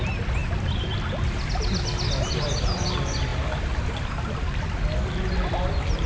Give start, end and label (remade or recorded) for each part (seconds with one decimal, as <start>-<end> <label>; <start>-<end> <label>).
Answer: 0.0-6.1 recorded